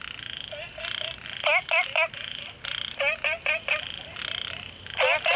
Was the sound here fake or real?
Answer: real